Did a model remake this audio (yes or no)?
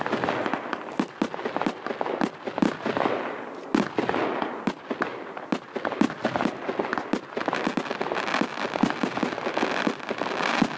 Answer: no